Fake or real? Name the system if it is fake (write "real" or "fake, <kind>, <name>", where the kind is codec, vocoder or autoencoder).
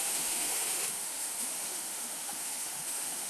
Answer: fake, autoencoder, DAC-VAE